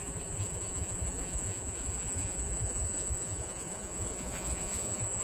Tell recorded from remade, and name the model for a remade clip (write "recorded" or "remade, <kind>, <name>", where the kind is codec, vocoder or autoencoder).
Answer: remade, vocoder, Vocos